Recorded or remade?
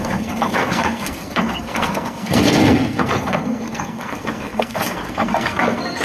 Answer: remade